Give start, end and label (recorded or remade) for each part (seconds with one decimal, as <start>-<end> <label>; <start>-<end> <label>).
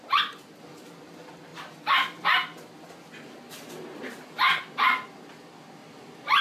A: 0.0-5.8 recorded; 5.8-6.4 remade